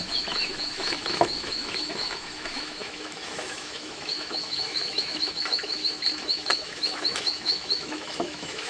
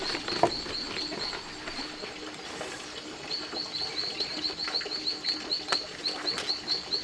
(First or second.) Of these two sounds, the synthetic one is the first